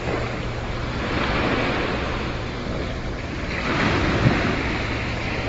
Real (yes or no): yes